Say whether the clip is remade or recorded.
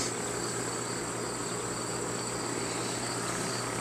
recorded